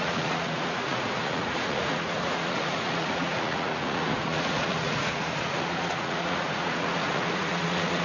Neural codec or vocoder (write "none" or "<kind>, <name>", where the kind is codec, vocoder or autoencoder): vocoder, Vocos